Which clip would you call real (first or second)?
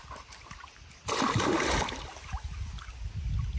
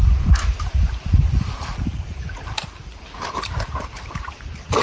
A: first